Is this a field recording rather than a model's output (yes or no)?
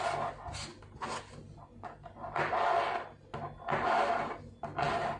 yes